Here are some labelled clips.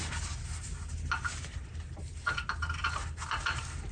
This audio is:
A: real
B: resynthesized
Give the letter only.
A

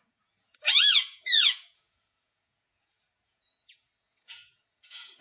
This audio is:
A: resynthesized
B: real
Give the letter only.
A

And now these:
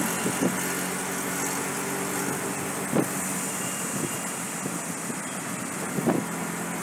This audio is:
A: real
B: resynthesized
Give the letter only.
A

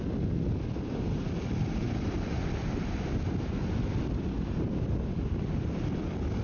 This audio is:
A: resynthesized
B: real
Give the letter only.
B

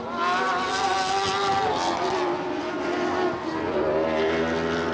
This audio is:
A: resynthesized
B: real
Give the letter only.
B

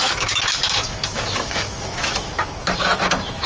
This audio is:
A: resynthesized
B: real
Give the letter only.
A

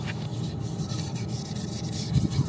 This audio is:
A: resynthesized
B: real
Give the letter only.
B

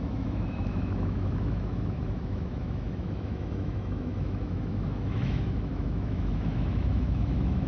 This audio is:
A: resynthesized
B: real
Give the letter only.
A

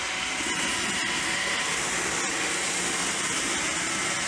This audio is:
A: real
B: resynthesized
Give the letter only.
B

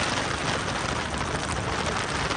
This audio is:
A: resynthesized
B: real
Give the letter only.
B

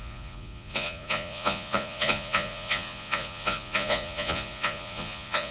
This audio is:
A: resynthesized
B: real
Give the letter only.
A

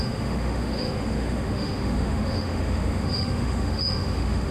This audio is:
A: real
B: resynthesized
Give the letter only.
B